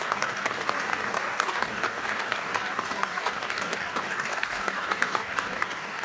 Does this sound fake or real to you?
fake